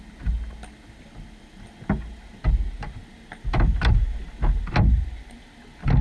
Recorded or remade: recorded